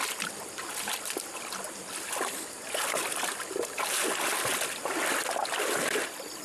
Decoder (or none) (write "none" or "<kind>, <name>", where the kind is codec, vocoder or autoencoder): none